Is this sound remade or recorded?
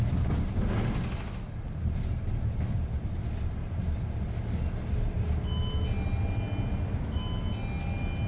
recorded